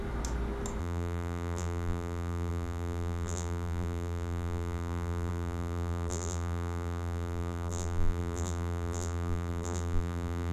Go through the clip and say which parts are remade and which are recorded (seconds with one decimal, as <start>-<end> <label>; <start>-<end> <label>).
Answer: 0.0-0.8 recorded; 0.8-10.5 remade